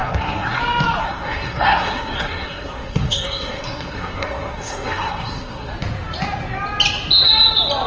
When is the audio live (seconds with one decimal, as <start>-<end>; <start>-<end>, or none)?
0.6-1.0; 5.7-7.9